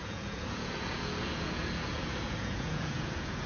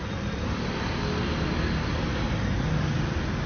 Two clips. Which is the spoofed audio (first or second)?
first